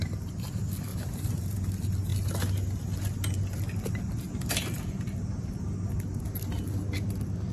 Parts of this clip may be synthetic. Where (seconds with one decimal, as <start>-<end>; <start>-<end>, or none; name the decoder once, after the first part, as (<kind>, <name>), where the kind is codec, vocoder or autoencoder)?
0.9-1.7 (vocoder, BigVGAN v2)